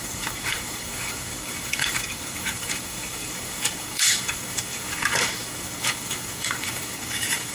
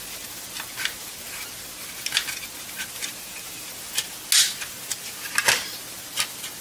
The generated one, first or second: first